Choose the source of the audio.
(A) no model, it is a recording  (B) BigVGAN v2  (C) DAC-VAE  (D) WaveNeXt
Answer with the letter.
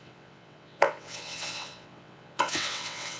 D